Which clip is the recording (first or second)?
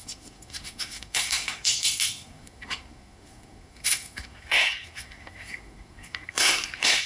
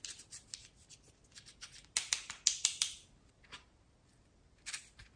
second